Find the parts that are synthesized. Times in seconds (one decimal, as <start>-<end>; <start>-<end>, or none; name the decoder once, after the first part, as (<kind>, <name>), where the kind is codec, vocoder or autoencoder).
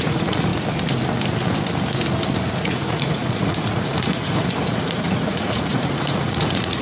0.0-0.5 (vocoder, Vocos); 2.6-6.8